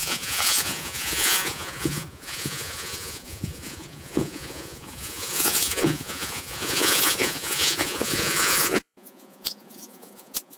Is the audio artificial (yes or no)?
yes